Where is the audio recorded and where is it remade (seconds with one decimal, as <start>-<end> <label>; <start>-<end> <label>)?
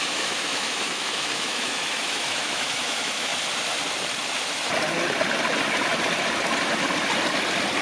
0.0-3.3 remade; 3.3-7.8 recorded